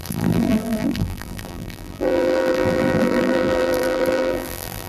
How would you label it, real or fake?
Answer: fake